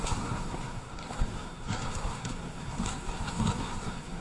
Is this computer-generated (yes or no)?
yes